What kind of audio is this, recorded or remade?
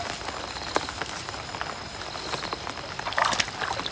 recorded